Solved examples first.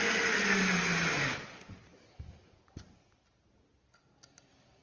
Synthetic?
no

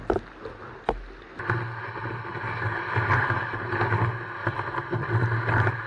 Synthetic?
no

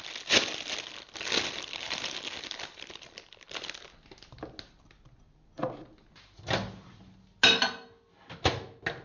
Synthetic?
no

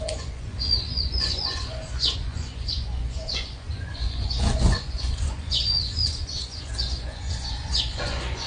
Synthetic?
yes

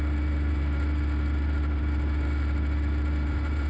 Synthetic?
no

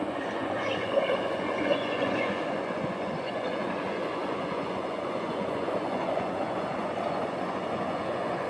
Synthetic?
yes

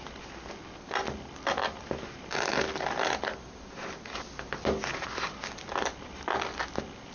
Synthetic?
no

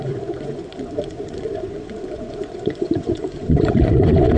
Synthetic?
yes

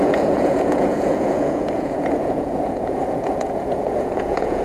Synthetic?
yes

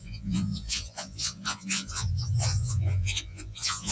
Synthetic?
yes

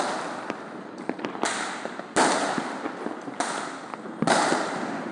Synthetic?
no